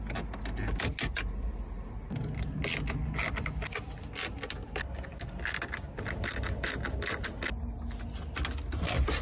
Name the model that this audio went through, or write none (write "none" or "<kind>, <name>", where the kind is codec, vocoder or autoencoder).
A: none